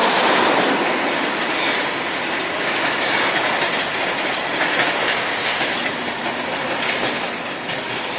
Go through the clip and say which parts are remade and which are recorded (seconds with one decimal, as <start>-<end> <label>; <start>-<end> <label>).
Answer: 0.0-5.0 recorded; 5.0-5.6 remade; 5.6-8.2 recorded

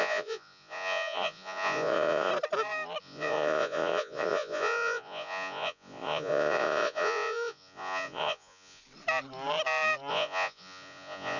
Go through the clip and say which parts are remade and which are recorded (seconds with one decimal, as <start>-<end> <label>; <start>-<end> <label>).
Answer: 0.0-2.3 remade; 2.3-3.0 recorded; 3.0-8.8 remade; 8.8-10.1 recorded; 10.1-11.4 remade

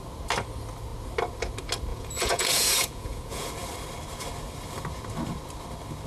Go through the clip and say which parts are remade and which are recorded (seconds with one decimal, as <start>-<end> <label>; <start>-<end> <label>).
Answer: 0.0-1.9 recorded; 1.9-3.5 remade; 3.5-6.1 recorded

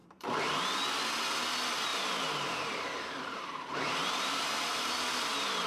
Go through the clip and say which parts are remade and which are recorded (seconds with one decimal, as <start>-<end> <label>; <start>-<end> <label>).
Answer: 0.0-0.6 remade; 0.6-1.9 recorded; 1.9-4.9 remade; 4.9-5.7 recorded

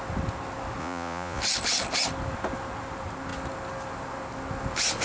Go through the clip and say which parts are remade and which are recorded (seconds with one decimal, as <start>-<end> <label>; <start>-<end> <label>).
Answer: 0.0-0.8 recorded; 0.8-1.4 remade; 1.4-5.0 recorded

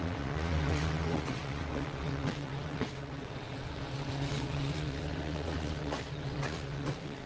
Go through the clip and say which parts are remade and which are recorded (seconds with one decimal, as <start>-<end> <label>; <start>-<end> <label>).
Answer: 0.0-7.3 remade

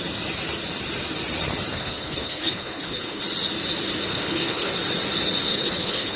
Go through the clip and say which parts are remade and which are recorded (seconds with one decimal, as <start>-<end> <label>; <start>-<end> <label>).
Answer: 0.0-1.7 recorded; 1.7-3.2 remade; 3.2-4.1 recorded; 4.1-4.7 remade; 4.7-5.5 recorded; 5.5-6.2 remade

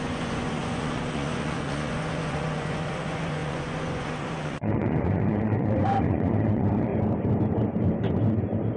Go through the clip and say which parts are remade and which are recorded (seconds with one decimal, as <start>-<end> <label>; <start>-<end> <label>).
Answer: 0.0-6.9 remade; 6.9-8.8 recorded